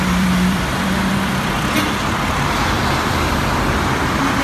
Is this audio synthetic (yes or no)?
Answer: yes